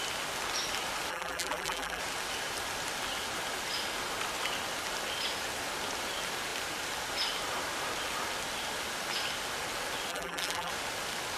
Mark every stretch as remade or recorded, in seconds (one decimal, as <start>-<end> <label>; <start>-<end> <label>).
0.0-1.1 recorded; 1.1-2.0 remade; 2.0-10.1 recorded; 10.1-10.7 remade; 10.7-11.4 recorded